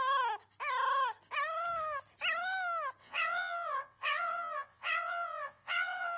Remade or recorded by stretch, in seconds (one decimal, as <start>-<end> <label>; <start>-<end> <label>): 0.0-3.0 recorded; 3.0-6.2 remade